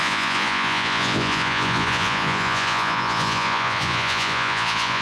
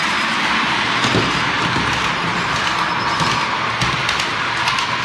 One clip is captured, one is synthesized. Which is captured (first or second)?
second